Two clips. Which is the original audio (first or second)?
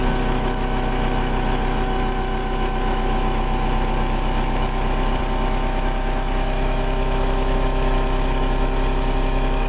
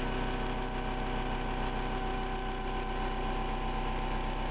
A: second